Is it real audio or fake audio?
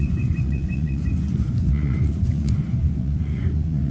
fake